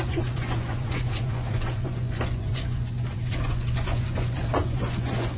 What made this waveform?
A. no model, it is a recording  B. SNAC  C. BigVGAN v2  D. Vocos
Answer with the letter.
D